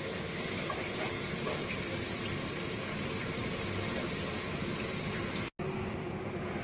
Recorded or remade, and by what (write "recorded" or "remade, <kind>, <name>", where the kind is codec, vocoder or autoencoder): recorded